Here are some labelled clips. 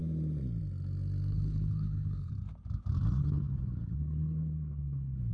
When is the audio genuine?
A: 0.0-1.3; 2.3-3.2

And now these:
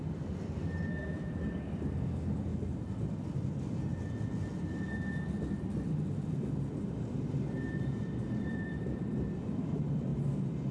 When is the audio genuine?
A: 2.5-3.1; 3.9-6.7; 10.1-10.7

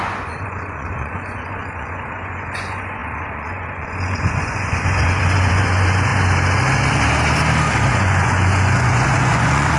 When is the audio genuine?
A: 6.1-7.9